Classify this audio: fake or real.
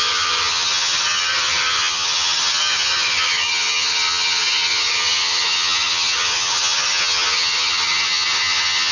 fake